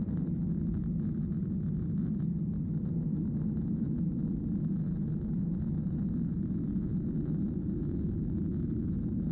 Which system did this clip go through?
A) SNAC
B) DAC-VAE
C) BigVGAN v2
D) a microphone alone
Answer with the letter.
D